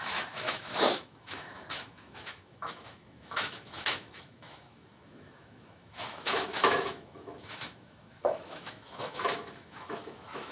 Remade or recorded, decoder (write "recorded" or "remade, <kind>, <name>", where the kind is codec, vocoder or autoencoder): remade, autoencoder, DAC-VAE